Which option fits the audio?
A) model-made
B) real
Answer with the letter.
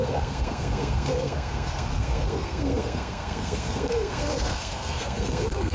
A